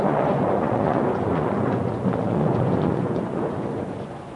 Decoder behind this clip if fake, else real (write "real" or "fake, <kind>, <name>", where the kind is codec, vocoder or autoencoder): fake, vocoder, Vocos